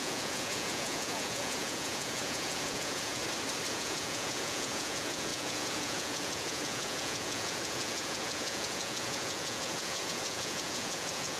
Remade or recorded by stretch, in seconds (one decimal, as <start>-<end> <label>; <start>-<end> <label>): 0.0-3.2 remade; 3.2-3.7 recorded; 3.7-11.4 remade